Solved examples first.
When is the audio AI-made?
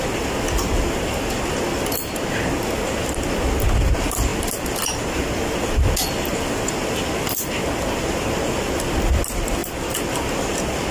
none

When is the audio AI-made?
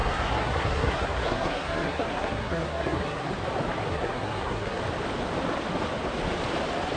0.0-3.3 (codec, SNAC); 3.9-4.8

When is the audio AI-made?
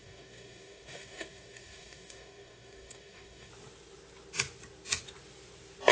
0.0-3.5 (codec, DAC)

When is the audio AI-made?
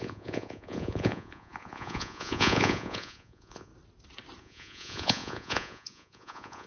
0.0-3.7 (vocoder, Vocos); 4.4-6.7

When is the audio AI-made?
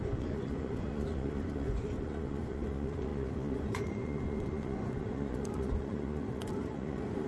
0.0-7.3 (vocoder, Vocos)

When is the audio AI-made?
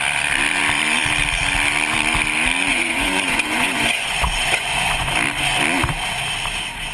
2.7-5.1 (vocoder, Vocos)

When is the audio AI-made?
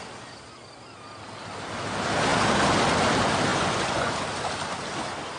3.5-4.1 (vocoder, Vocos)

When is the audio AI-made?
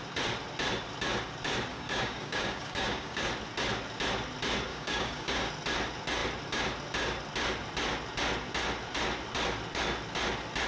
1.7-3.3 (codec, DAC); 4.7-5.5